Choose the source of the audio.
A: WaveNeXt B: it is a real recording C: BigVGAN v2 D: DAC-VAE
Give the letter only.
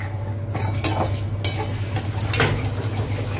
B